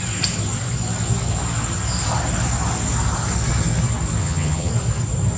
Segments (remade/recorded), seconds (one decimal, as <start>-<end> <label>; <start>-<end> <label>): 0.0-4.2 recorded; 4.2-4.7 remade; 4.7-5.4 recorded